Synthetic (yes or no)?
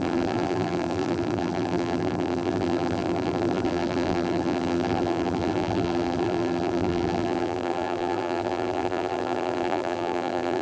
yes